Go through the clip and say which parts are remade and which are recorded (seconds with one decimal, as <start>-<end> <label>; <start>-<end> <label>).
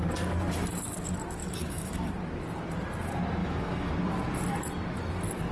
0.0-1.4 recorded; 1.4-2.1 remade; 2.1-3.4 recorded; 3.4-3.9 remade; 3.9-5.5 recorded